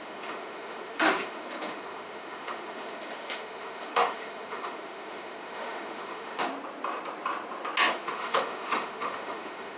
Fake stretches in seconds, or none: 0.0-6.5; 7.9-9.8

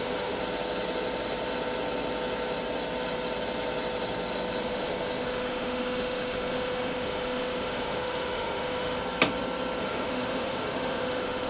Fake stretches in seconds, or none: 0.0-0.4; 4.6-9.0; 9.8-11.5

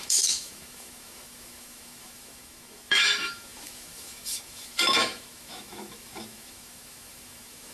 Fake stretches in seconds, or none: 0.0-7.7